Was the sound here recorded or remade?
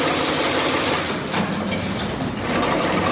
recorded